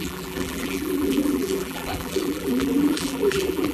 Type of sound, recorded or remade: remade